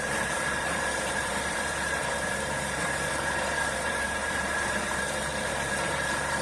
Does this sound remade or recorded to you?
remade